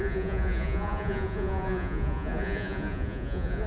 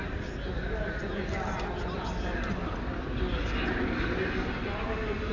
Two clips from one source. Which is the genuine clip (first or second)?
second